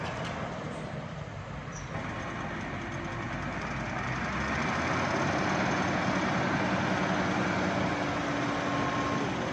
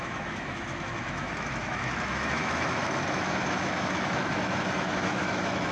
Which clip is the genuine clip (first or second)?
first